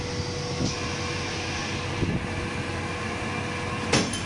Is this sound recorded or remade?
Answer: recorded